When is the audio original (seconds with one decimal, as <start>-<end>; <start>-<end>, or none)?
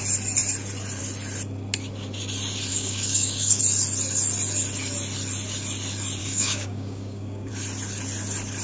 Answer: 0.0-2.7; 3.6-6.2; 7.5-8.6